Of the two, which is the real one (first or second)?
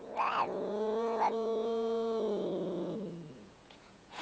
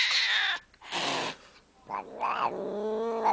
second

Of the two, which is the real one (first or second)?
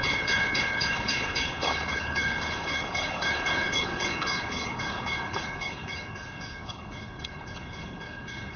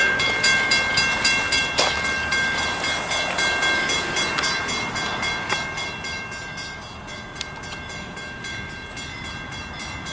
second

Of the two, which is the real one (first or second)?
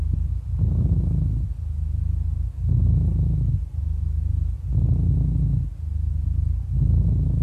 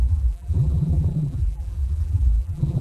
first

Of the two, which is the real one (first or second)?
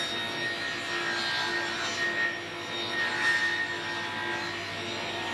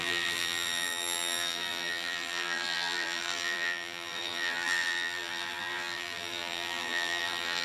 first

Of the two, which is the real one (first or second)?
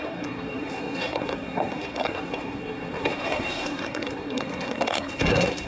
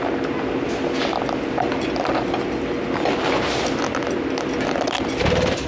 second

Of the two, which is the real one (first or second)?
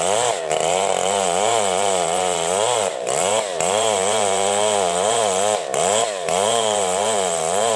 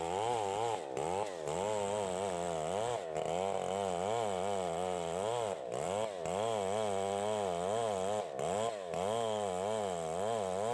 second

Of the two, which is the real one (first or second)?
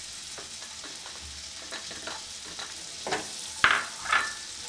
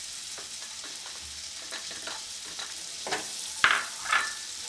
first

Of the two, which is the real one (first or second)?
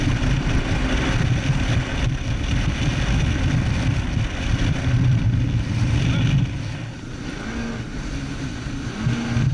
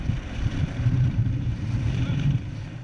first